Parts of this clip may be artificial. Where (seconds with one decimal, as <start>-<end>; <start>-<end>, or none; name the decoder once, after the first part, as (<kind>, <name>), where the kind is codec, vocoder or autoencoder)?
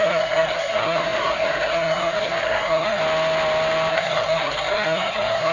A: 0.0-3.0 (codec, SNAC); 3.9-5.5